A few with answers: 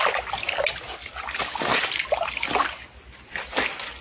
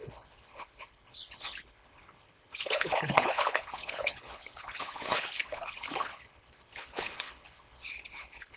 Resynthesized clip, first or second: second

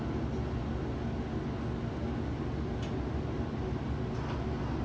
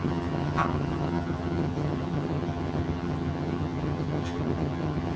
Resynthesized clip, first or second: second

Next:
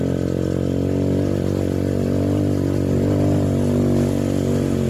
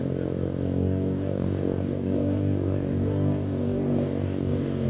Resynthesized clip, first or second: second